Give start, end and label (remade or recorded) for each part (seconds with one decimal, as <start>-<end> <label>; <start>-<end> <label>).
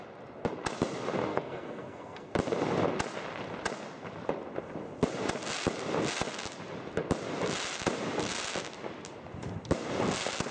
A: 0.0-1.3 recorded; 1.3-2.3 remade; 2.3-10.5 recorded